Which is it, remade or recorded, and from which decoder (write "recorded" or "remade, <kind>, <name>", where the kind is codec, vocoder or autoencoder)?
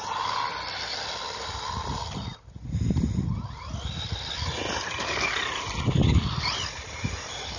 recorded